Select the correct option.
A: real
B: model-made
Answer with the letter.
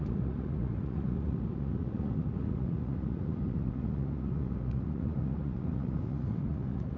B